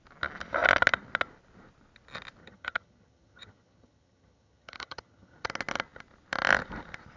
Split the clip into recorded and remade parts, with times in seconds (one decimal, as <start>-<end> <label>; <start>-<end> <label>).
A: 0.0-2.4 recorded; 2.4-5.5 remade; 5.5-7.2 recorded